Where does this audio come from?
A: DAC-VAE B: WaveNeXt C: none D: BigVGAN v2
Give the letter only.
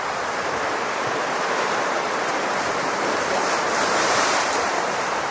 D